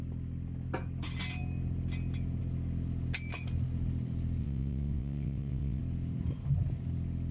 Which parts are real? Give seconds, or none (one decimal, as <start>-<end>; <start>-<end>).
0.0-4.4; 5.8-7.3